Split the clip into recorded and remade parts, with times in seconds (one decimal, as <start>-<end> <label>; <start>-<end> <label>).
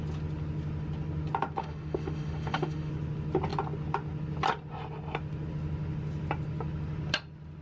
0.0-1.6 recorded; 1.6-2.9 remade; 2.9-7.6 recorded